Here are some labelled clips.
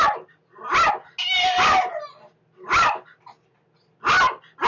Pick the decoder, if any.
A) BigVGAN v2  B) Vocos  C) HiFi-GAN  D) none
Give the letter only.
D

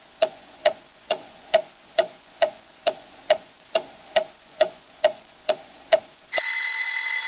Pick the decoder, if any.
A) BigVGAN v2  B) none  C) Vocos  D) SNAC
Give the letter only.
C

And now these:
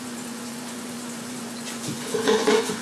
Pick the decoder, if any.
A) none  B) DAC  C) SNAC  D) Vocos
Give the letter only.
D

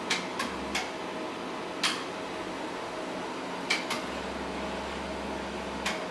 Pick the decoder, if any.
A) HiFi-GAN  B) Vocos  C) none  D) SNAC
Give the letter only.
C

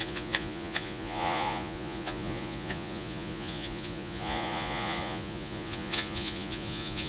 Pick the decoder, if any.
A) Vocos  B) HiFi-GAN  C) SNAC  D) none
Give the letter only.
A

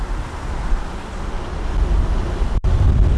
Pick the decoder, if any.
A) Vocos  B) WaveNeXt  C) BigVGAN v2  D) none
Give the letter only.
D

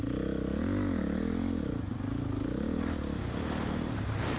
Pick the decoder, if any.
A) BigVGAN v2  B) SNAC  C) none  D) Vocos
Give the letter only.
C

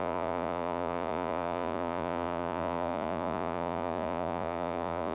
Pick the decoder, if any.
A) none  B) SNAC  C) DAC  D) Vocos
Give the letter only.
D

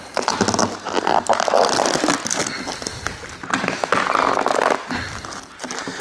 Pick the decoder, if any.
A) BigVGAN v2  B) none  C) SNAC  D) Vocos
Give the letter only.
B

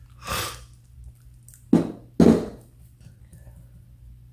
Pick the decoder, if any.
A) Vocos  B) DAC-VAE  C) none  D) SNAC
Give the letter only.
C